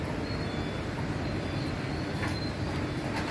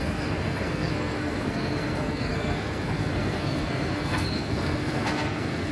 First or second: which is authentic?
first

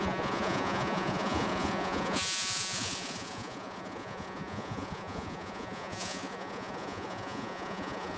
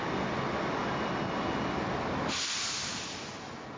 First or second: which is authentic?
second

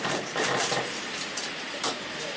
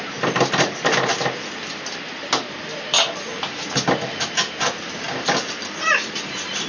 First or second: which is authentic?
second